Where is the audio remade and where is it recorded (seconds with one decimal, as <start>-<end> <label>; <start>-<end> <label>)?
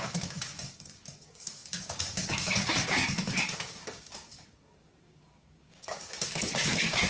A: 0.0-7.1 remade